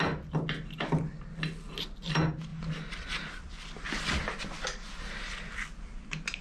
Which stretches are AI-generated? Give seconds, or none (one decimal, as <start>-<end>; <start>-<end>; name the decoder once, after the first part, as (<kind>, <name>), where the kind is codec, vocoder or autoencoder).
none